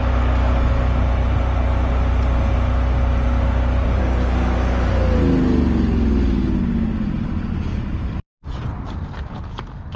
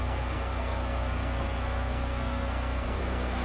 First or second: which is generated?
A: second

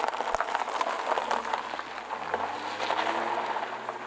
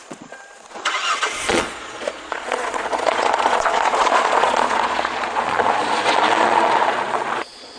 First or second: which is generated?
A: second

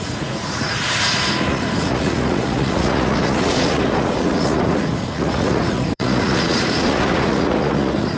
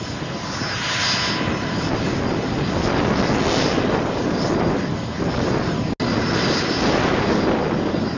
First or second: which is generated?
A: first